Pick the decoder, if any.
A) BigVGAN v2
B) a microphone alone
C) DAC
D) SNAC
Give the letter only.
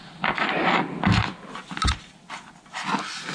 B